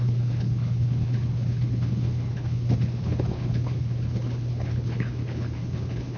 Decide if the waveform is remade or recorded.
remade